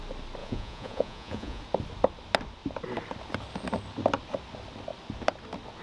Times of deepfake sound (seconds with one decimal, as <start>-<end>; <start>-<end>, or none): 0.4-1.6